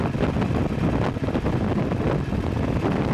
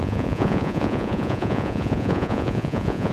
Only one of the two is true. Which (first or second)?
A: first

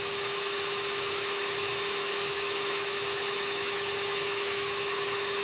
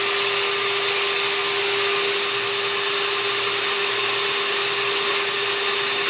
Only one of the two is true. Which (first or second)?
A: second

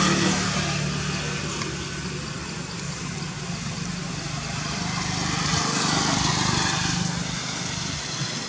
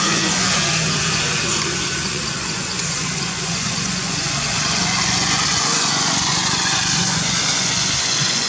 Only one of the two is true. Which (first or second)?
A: first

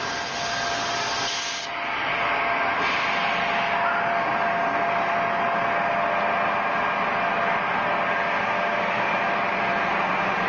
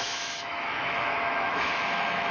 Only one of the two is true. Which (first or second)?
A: first